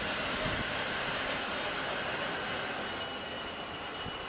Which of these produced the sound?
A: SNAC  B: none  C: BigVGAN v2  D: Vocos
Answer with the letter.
B